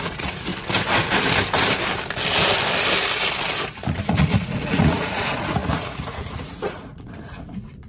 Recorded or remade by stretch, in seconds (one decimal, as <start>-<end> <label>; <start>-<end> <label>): 0.0-0.5 remade; 0.5-3.6 recorded; 3.6-7.9 remade